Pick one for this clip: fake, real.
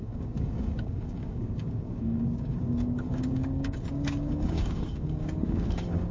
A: fake